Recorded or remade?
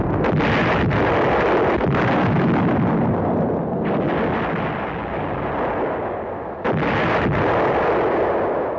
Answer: recorded